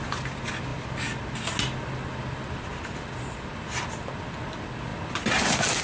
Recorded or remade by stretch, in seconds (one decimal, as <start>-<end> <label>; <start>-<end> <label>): 0.0-5.8 recorded